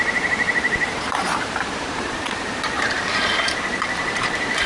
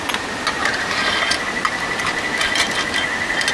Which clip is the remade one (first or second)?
first